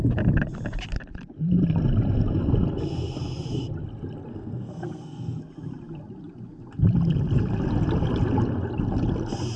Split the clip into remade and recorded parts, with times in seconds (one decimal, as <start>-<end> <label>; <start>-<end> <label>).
0.0-4.3 recorded; 4.3-5.4 remade; 5.4-9.6 recorded